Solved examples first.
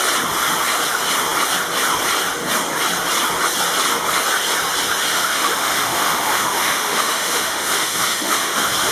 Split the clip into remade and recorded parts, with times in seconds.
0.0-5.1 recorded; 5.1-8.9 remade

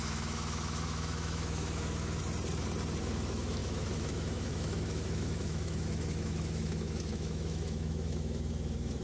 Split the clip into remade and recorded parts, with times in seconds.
0.0-2.2 remade; 2.2-3.0 recorded; 3.0-9.0 remade

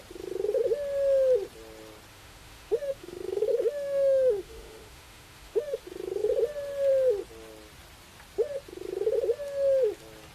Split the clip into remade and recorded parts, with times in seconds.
0.0-2.1 recorded; 2.1-5.8 remade; 5.8-10.3 recorded